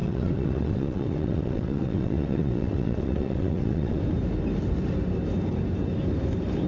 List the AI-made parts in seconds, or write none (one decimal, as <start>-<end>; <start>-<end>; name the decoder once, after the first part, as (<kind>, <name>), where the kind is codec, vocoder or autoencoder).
0.0-4.0 (vocoder, WaveNeXt)